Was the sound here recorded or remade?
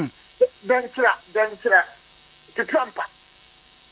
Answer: remade